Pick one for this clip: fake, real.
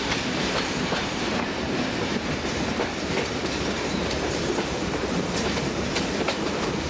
fake